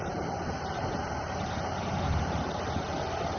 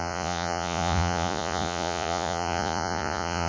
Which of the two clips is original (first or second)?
first